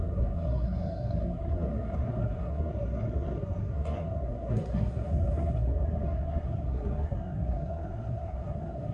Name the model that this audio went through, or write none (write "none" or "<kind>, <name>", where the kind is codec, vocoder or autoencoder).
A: codec, SNAC